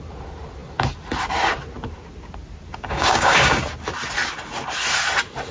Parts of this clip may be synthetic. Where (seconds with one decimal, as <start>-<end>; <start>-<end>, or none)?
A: 2.7-3.6